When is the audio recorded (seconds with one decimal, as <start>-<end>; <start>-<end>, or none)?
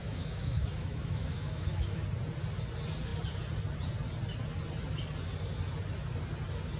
2.0-6.8